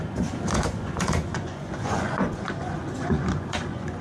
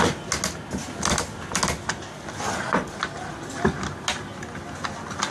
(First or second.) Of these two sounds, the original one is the second